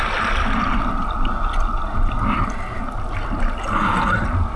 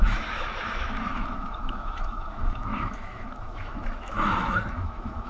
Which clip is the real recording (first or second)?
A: first